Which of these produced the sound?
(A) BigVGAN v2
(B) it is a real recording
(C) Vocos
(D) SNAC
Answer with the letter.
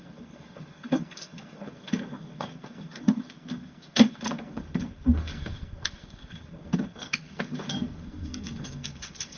D